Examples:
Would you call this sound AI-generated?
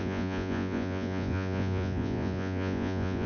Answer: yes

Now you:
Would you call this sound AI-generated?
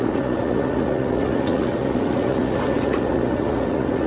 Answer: yes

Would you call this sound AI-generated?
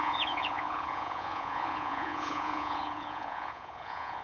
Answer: yes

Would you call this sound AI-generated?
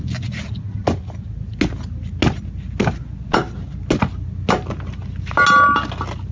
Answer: no